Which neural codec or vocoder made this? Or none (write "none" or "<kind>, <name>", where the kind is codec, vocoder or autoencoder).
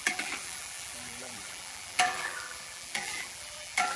vocoder, BigVGAN v2